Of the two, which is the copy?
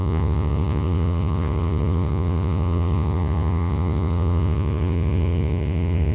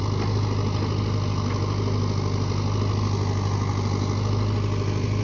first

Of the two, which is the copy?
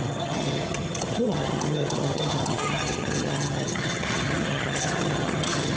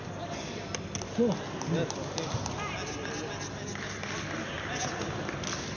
first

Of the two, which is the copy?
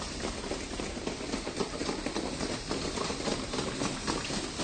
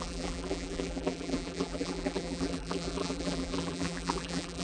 second